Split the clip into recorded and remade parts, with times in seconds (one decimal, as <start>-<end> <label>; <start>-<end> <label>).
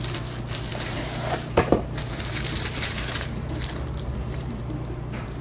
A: 0.0-0.7 recorded; 0.7-3.7 remade; 3.7-4.2 recorded; 4.2-5.4 remade